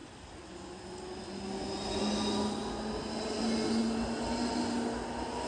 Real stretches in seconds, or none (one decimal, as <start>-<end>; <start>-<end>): 0.0-5.5